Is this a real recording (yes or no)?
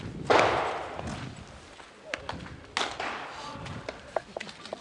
yes